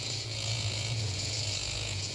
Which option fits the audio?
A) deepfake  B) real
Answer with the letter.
A